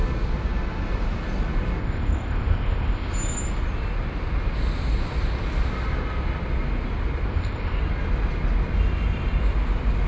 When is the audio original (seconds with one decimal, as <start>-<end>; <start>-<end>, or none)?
0.0-1.8; 3.1-7.3; 7.8-10.1